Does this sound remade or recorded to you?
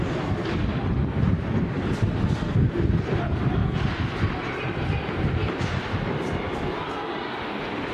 recorded